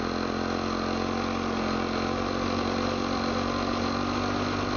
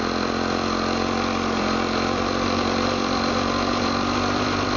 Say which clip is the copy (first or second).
second